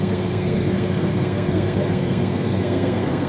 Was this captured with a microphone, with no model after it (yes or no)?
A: no